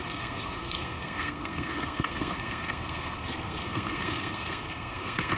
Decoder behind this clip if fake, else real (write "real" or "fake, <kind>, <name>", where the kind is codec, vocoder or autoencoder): fake, codec, SNAC